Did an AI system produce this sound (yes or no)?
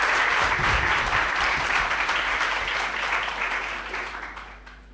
yes